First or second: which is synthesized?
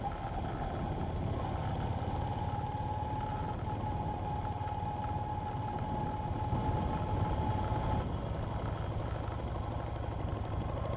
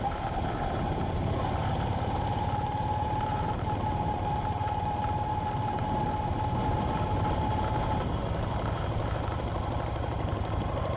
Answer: second